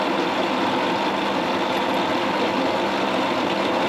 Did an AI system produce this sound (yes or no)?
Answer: no